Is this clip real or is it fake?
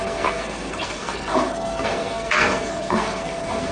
fake